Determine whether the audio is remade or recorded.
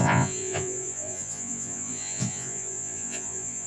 remade